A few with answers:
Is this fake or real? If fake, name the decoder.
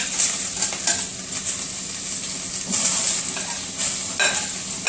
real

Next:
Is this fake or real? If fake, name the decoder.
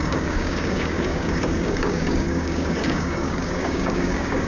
fake, codec, DAC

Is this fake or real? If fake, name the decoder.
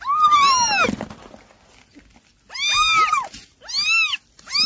real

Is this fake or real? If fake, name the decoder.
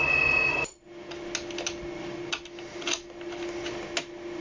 real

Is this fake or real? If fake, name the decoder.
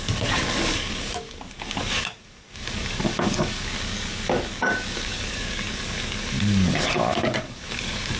fake, codec, DAC